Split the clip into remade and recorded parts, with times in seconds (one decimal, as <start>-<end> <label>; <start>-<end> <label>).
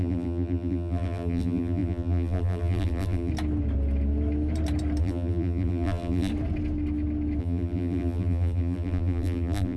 0.0-3.3 remade; 3.3-5.0 recorded; 5.0-6.3 remade; 6.3-7.4 recorded; 7.4-9.8 remade